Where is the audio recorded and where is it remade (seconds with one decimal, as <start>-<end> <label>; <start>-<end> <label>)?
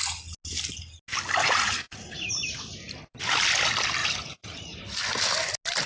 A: 0.0-1.4 recorded; 1.4-2.3 remade; 2.3-4.0 recorded; 4.0-5.0 remade; 5.0-5.9 recorded